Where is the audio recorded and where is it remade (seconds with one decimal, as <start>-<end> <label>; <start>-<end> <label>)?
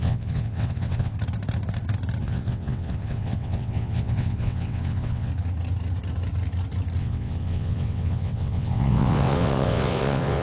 0.0-1.1 remade; 1.1-2.2 recorded; 2.2-5.3 remade; 5.3-7.0 recorded; 7.0-10.4 remade